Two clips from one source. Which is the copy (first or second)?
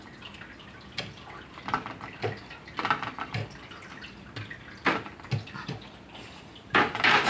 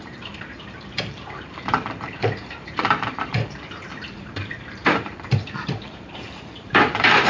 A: second